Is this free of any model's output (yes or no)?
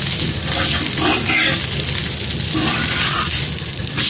yes